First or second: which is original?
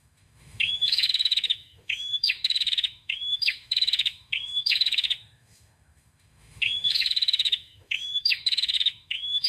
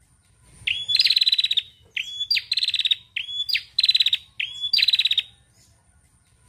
second